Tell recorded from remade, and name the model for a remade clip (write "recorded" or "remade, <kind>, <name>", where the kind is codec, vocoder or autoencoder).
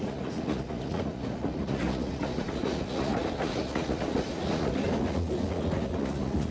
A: remade, vocoder, Vocos